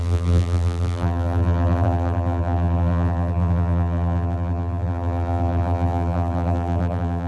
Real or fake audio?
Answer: fake